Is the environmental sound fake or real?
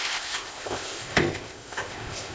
fake